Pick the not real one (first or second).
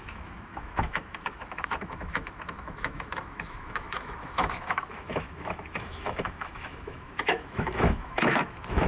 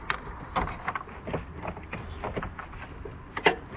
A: first